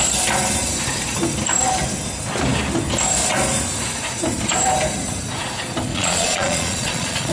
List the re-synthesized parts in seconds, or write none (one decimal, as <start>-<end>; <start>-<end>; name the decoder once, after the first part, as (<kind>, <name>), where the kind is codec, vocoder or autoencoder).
5.9-7.3 (vocoder, Vocos)